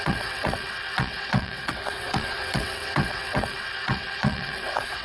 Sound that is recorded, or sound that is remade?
remade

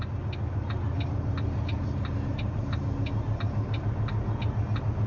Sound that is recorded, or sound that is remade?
recorded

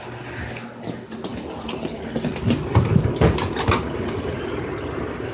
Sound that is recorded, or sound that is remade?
recorded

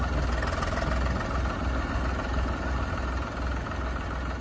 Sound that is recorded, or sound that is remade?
recorded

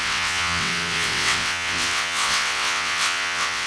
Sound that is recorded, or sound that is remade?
remade